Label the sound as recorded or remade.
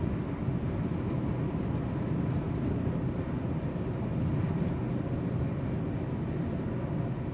recorded